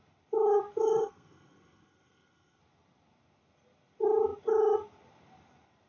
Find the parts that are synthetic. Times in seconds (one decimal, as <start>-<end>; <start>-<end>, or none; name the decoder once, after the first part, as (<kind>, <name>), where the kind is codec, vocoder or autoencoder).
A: 1.0-2.6 (codec, SNAC)